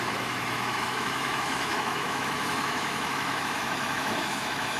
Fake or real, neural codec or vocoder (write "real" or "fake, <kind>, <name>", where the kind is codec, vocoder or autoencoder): fake, autoencoder, DAC-VAE